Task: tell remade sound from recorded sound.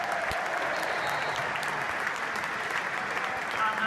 recorded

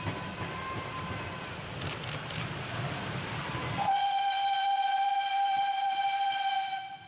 recorded